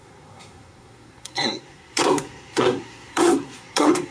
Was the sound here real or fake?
fake